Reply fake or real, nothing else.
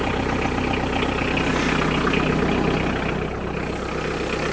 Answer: real